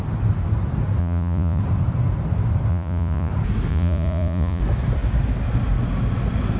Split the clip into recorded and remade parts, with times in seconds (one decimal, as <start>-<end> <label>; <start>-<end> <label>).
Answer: 0.0-1.0 recorded; 1.0-1.6 remade; 1.6-2.7 recorded; 2.7-3.3 remade; 3.3-3.7 recorded; 3.7-4.6 remade; 4.6-6.6 recorded